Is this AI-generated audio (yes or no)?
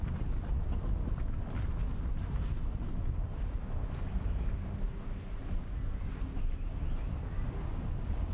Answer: no